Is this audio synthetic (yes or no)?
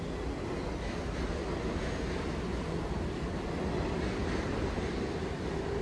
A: no